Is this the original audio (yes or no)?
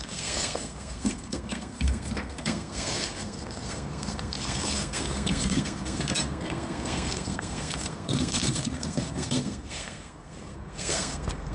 no